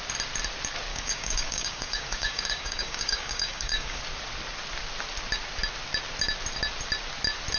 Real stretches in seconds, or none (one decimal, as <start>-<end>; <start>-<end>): 0.0-0.9; 4.0-7.6